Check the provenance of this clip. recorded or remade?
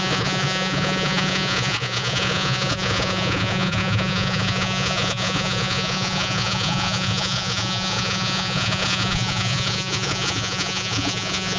remade